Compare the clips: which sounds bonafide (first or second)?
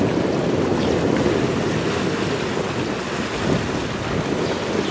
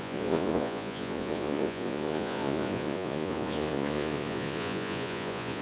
first